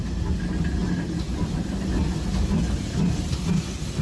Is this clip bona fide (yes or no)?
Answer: yes